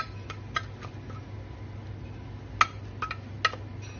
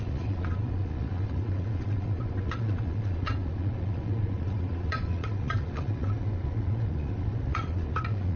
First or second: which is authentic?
first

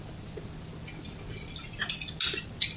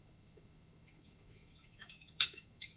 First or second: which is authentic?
first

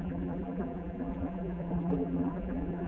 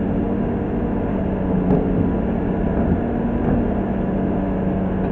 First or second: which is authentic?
second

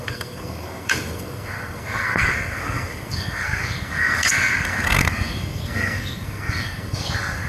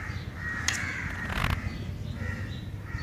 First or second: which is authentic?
second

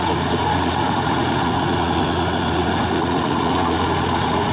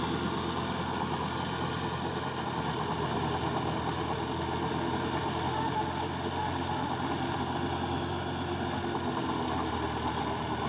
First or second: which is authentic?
second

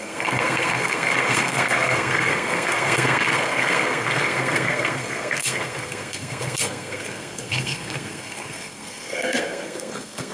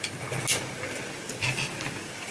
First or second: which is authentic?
second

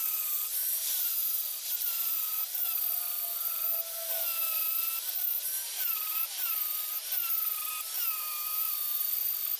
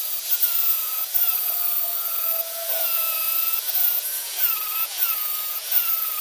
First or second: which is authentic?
first